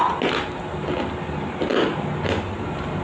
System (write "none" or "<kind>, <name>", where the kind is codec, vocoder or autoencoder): none